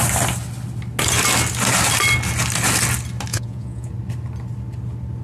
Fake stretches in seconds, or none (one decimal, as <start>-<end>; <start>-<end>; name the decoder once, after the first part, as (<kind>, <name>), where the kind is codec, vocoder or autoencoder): 3.3-3.9 (vocoder, Vocos)